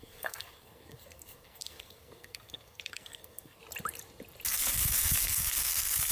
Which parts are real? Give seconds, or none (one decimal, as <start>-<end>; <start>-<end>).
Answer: 3.6-4.5